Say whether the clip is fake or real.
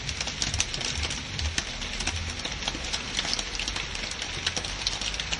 real